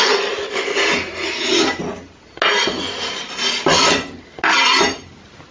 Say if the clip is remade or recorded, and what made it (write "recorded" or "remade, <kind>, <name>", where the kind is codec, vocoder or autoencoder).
recorded